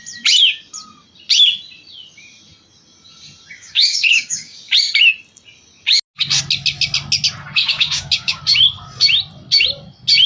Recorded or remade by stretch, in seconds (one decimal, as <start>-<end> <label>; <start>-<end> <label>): 0.0-3.5 recorded; 3.5-4.7 remade; 4.7-7.6 recorded; 7.6-8.4 remade; 8.4-10.3 recorded